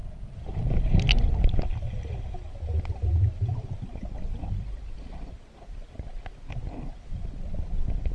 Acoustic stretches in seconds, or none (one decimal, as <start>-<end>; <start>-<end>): 0.0-8.1

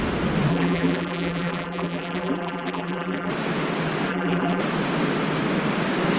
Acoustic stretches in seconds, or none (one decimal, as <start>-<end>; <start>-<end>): 0.0-0.5; 3.3-4.1; 4.6-6.2

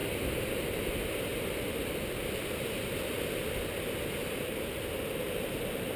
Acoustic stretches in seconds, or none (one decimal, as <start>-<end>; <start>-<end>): 0.0-6.0

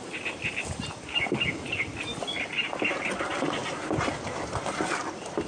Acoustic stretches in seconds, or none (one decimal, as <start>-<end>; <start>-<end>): 0.0-1.9; 2.5-5.5

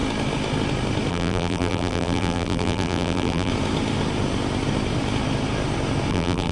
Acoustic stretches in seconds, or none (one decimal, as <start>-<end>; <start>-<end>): 0.0-1.1; 3.5-6.1

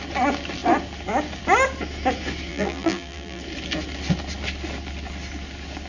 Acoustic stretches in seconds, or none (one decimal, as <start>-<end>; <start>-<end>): 0.0-2.5; 3.4-5.9

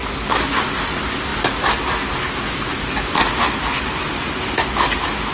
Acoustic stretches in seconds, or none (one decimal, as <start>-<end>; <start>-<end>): 0.0-5.3